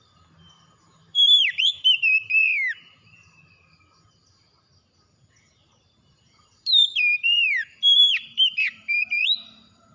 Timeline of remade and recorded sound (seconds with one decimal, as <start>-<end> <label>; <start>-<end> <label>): 0.0-2.5 remade; 2.5-5.3 recorded; 5.3-9.9 remade